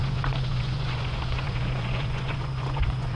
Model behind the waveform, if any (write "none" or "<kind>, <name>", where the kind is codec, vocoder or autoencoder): vocoder, Vocos